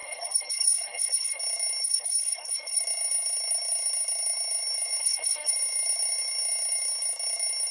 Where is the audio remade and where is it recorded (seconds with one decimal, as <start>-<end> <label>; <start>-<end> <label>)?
0.0-1.4 remade; 1.4-1.8 recorded; 1.8-2.8 remade; 2.8-5.0 recorded; 5.0-5.5 remade; 5.5-7.7 recorded